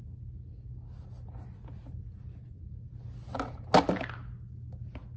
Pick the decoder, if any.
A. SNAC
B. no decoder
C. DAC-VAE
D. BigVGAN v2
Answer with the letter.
B